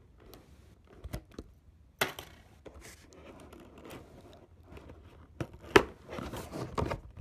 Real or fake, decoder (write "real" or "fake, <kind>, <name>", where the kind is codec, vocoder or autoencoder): real